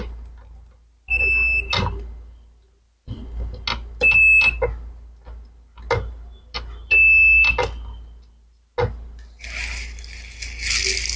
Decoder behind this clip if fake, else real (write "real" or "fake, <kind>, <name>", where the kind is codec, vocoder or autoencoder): real